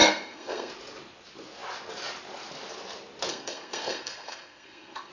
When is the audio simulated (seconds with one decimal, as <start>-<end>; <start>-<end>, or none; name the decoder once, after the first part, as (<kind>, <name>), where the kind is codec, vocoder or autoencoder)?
0.0-0.7 (codec, SNAC); 3.3-5.1